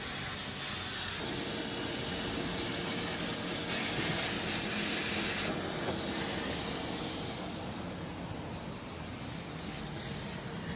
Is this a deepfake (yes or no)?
no